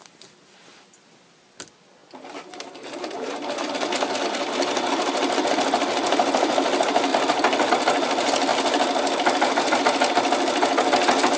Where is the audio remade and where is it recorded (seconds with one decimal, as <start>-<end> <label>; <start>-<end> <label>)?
0.0-2.0 recorded; 2.0-5.5 remade; 5.5-7.1 recorded; 7.1-7.7 remade; 7.7-8.5 recorded; 8.5-9.8 remade; 9.8-11.4 recorded